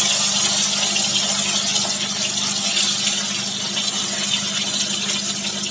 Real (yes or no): yes